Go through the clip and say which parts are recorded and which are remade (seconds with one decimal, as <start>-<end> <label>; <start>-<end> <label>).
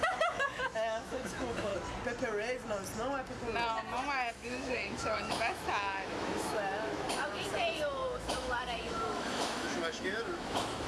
0.0-1.7 remade; 1.7-4.3 recorded; 4.3-10.9 remade